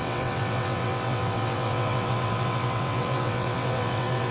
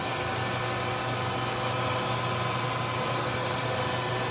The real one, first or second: second